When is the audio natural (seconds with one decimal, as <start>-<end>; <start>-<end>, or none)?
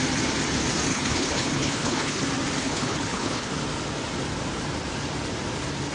0.0-0.9; 2.2-2.6; 3.5-5.9